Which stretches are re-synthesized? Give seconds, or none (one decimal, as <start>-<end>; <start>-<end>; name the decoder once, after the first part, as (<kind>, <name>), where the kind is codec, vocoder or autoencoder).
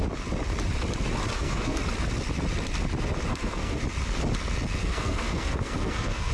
1.3-1.8 (codec, SNAC); 3.3-3.8; 4.8-6.3